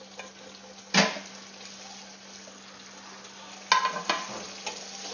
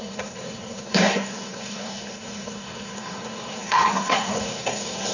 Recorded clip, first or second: first